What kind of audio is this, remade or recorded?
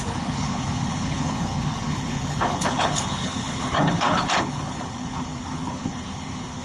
remade